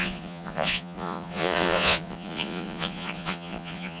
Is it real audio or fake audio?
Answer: fake